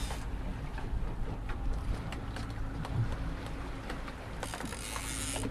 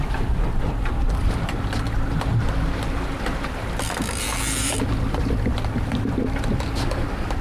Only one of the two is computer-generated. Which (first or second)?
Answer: second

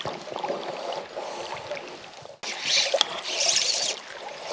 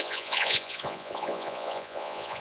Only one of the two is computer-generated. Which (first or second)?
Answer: second